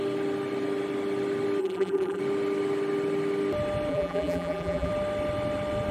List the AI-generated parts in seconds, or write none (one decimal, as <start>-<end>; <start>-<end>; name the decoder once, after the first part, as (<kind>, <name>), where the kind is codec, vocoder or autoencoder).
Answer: 1.6-2.2 (vocoder, BigVGAN v2); 3.9-4.9